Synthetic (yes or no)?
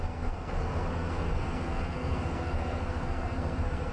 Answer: yes